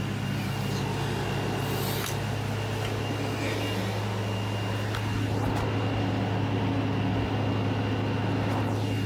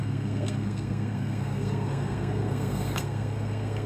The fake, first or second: second